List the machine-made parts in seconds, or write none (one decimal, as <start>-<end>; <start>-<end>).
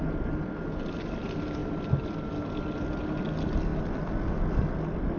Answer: none